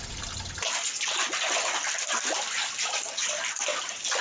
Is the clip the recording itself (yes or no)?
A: yes